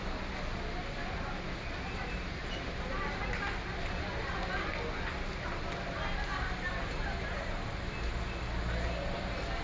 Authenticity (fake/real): real